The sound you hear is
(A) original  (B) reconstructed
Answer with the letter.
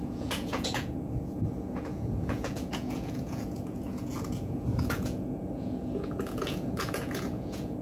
B